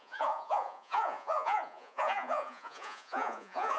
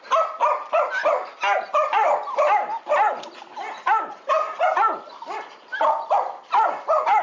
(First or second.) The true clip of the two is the second